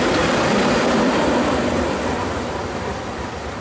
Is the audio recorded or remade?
remade